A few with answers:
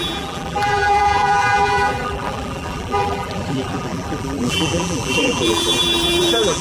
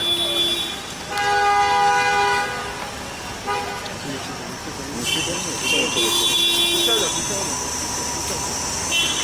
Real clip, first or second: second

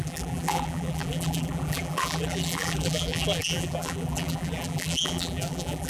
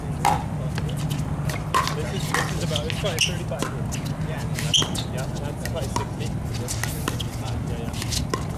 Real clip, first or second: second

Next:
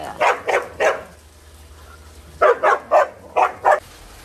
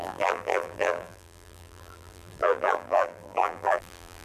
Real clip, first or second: first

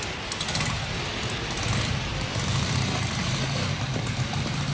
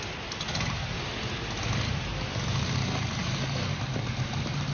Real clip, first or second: second